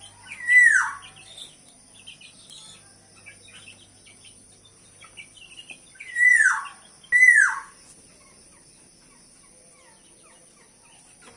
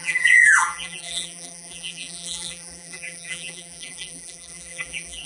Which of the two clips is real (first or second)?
first